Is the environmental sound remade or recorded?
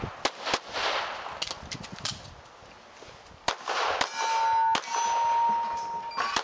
recorded